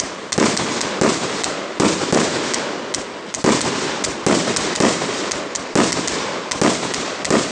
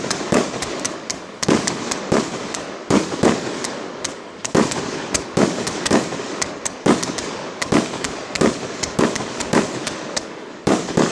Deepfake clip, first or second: second